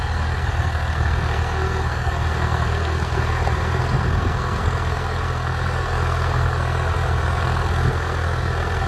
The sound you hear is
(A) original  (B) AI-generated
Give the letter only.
B